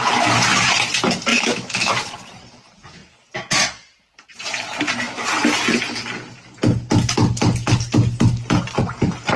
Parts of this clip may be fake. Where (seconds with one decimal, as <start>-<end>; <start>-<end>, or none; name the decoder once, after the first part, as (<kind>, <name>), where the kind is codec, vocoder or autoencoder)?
1.3-1.9 (autoencoder, DAC-VAE)